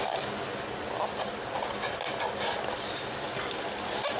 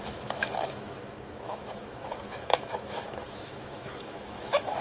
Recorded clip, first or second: first